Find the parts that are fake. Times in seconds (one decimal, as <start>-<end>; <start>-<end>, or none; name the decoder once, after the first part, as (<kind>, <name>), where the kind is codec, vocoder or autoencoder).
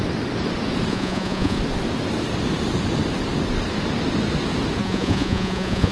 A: 0.9-1.6 (vocoder, Vocos); 4.8-5.9